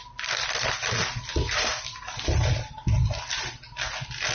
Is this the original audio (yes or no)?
yes